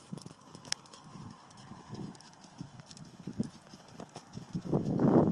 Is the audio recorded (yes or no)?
no